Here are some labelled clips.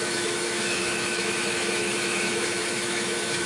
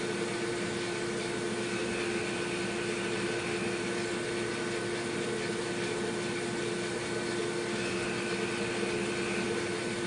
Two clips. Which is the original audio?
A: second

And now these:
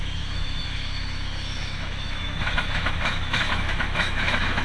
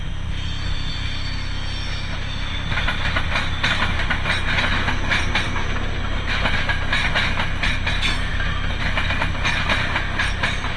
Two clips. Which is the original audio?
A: second